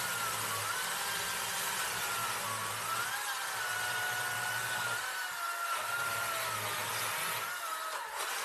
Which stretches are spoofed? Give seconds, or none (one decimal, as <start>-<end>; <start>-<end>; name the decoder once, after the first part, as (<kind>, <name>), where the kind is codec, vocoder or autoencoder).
none